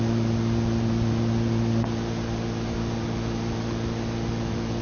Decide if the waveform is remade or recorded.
recorded